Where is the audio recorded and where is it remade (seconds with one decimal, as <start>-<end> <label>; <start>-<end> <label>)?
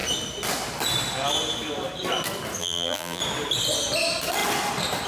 0.0-2.6 recorded; 2.6-3.2 remade; 3.2-5.1 recorded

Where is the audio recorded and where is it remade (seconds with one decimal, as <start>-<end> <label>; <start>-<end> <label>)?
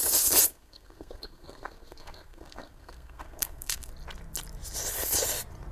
0.0-0.5 recorded; 0.5-3.9 remade; 3.9-5.7 recorded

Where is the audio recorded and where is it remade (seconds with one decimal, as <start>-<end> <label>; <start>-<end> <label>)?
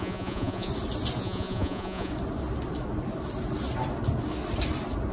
0.0-0.7 remade; 0.7-1.2 recorded; 1.2-2.1 remade; 2.1-5.1 recorded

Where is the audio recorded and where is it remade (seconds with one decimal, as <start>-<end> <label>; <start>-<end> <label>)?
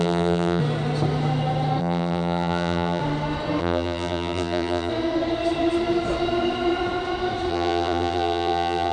0.0-0.6 remade; 0.6-1.8 recorded; 1.8-3.0 remade; 3.0-3.6 recorded; 3.6-4.9 remade; 4.9-7.5 recorded; 7.5-8.9 remade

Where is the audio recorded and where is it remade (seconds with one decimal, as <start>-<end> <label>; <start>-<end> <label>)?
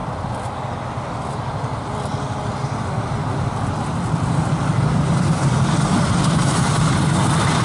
0.0-7.6 recorded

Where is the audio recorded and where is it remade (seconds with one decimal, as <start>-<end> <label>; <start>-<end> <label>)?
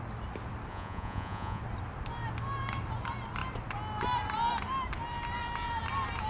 0.0-0.7 recorded; 0.7-1.6 remade; 1.6-6.3 recorded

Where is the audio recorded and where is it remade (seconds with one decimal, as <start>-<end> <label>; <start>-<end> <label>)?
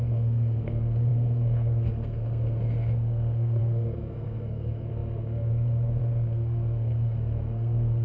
0.0-8.0 remade